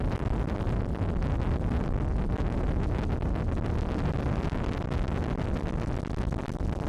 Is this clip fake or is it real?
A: real